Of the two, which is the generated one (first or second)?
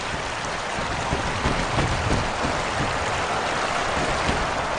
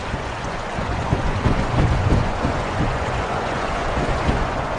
second